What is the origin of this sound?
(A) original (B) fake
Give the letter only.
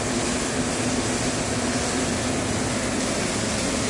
A